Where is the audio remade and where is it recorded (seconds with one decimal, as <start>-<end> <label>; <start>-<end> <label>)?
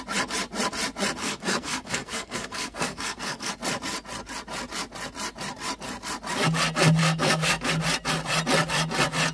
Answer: 0.0-1.2 recorded; 1.2-3.5 remade; 3.5-7.0 recorded; 7.0-7.7 remade; 7.7-9.3 recorded